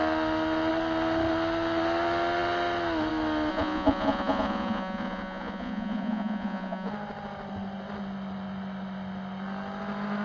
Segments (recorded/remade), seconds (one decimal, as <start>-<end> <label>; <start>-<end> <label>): 0.0-3.5 recorded; 3.5-6.9 remade; 6.9-10.2 recorded